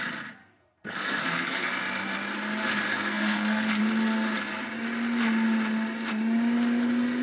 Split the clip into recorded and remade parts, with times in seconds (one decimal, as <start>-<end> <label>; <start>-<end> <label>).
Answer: 0.0-0.4 recorded; 0.4-1.7 remade; 1.7-2.9 recorded; 2.9-3.8 remade; 3.8-7.2 recorded